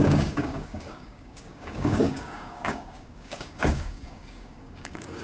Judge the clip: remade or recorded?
remade